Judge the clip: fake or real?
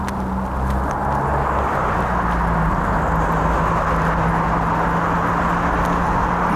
real